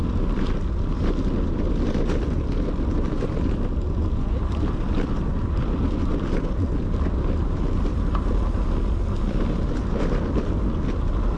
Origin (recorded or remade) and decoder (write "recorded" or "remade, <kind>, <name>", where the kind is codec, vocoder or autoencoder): remade, vocoder, BigVGAN v2